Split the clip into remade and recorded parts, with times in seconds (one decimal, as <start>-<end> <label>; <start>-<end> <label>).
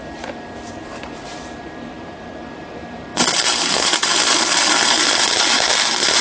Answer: 0.0-3.1 remade; 3.1-3.6 recorded; 3.6-4.1 remade; 4.1-4.9 recorded; 4.9-6.2 remade